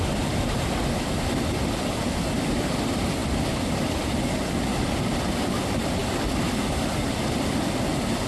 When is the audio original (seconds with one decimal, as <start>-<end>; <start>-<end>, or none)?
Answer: 0.0-8.3